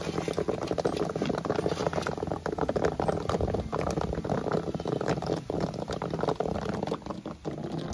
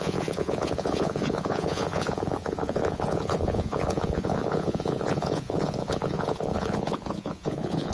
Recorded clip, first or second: first